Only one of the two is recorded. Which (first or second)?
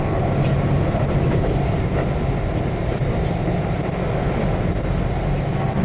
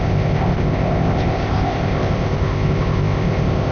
first